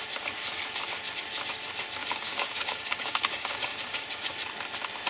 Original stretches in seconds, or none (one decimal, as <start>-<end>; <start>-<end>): 0.0-2.0; 4.3-5.1